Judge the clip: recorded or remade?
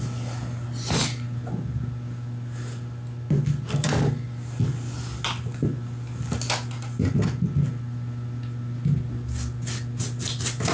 recorded